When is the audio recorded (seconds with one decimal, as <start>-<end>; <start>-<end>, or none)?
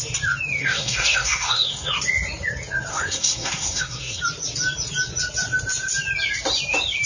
0.0-0.6; 2.0-2.9; 4.2-7.1